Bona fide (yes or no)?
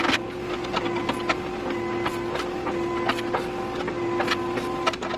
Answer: yes